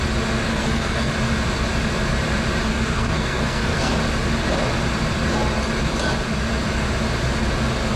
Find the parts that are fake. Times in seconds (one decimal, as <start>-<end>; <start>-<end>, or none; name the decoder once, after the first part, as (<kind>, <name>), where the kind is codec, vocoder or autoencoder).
0.5-1.1 (codec, SNAC); 2.7-3.9